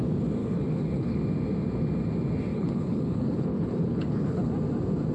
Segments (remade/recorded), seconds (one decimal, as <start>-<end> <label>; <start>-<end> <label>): 0.0-0.4 recorded; 0.4-1.2 remade; 1.2-2.5 recorded; 2.5-4.5 remade; 4.5-5.1 recorded